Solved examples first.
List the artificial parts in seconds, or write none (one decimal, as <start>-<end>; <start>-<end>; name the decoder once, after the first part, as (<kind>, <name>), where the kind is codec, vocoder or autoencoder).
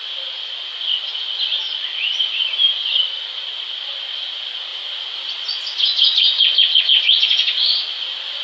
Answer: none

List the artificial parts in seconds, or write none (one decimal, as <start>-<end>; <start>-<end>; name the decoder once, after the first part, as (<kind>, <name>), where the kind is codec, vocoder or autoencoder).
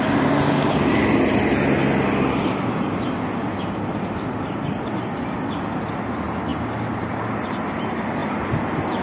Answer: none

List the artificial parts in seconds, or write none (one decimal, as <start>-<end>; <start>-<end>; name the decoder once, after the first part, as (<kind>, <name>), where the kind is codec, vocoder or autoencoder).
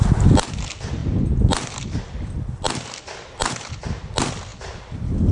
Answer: none